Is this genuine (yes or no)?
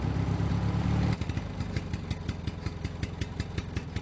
yes